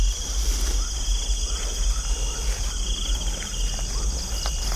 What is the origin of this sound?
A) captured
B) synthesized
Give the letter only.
A